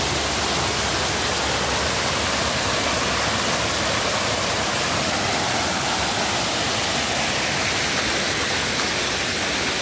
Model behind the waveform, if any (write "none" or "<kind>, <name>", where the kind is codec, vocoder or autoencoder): none